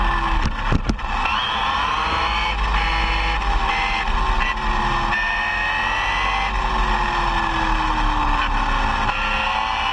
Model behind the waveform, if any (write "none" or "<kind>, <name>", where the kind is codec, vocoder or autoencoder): none